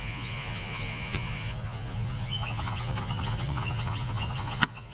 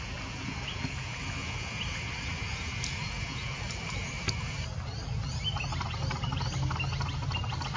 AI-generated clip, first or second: first